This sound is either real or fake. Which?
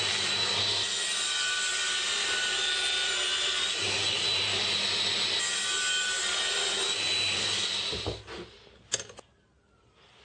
real